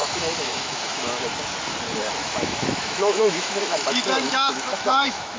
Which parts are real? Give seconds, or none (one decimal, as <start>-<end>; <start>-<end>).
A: 1.2-2.2

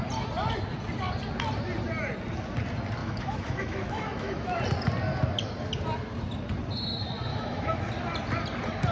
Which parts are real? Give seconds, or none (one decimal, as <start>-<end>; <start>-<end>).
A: 0.0-3.0; 4.6-7.3; 7.9-8.9